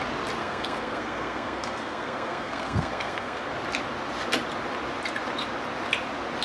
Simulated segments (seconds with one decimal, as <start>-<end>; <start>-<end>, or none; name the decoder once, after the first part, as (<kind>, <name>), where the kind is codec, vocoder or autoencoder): 0.4-3.5 (codec, SNAC)